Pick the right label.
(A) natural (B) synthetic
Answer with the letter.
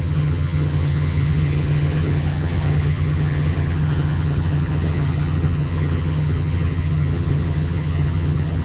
B